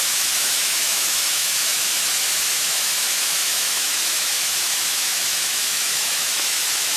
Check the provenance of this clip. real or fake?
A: fake